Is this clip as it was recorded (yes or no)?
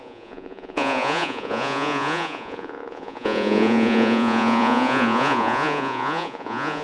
no